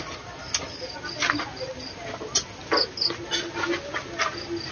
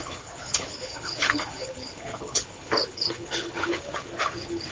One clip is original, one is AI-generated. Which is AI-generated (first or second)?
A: second